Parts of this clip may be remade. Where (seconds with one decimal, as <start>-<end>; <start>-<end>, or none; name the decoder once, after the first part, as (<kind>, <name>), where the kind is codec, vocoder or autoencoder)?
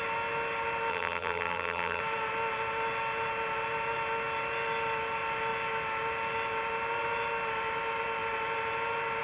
0.9-2.0 (vocoder, BigVGAN v2)